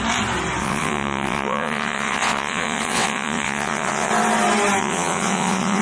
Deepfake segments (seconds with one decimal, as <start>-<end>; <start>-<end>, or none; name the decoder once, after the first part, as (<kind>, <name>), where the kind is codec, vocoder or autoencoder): 0.6-4.1 (vocoder, WaveNeXt); 4.8-5.8